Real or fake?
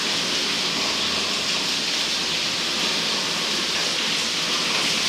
real